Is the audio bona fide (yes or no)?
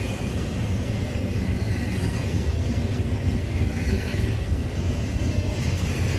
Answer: no